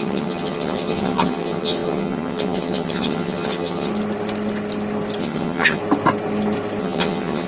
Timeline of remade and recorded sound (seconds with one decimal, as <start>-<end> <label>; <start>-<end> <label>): 0.0-3.9 remade; 3.9-5.2 recorded; 5.2-5.8 remade; 5.8-6.8 recorded; 6.8-7.5 remade